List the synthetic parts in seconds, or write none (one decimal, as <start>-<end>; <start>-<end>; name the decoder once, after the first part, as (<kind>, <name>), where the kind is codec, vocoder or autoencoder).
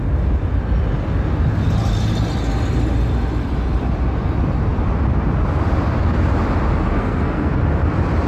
6.9-7.5 (codec, SNAC)